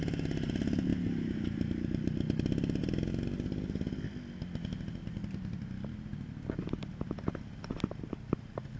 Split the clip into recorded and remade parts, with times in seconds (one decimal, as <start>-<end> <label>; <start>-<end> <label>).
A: 0.0-8.8 recorded